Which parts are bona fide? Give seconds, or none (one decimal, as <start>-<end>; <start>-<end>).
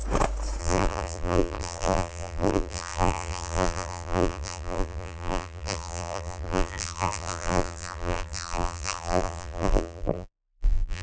0.0-0.6